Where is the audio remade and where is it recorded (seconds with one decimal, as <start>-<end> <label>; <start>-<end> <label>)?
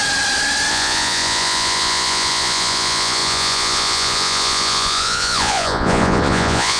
0.0-0.7 recorded; 0.7-6.8 remade